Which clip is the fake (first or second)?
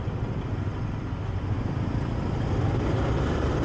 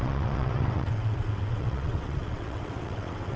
second